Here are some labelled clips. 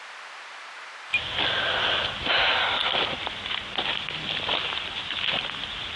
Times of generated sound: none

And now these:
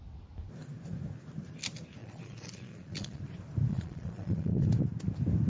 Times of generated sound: 2.0-3.2; 3.7-4.7

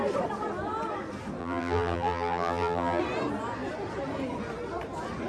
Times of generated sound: 1.4-3.0

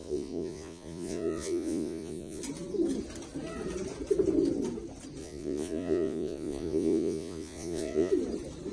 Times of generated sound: 0.0-2.4; 5.2-8.1